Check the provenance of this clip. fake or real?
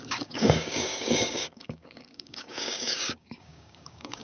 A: fake